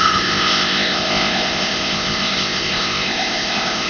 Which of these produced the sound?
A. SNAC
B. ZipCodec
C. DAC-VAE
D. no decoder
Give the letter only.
B